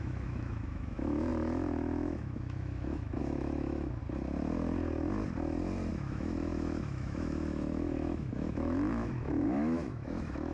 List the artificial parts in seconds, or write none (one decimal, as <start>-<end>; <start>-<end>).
0.0-4.0; 5.9-10.5